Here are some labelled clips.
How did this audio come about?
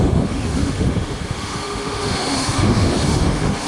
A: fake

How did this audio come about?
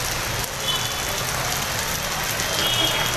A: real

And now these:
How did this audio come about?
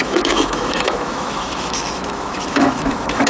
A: fake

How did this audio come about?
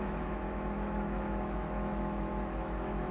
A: fake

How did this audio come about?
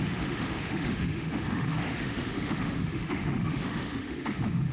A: fake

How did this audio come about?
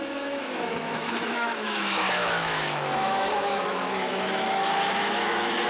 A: fake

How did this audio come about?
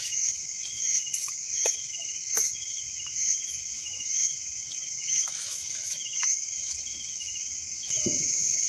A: fake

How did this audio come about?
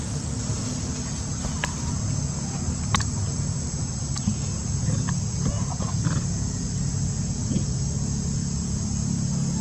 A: real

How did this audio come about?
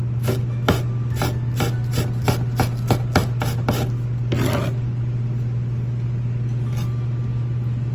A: real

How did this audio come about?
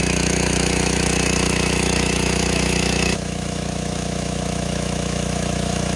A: fake